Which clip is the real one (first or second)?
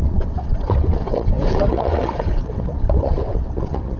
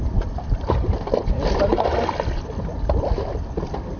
second